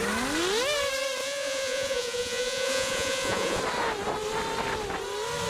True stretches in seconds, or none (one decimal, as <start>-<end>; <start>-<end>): 0.0-1.2; 3.6-5.5